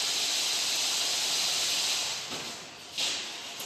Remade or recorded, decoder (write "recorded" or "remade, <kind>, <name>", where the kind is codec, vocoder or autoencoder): recorded